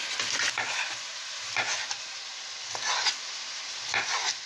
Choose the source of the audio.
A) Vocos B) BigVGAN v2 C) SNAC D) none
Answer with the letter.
D